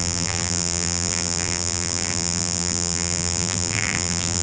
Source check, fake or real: fake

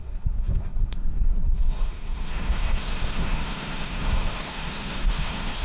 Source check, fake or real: fake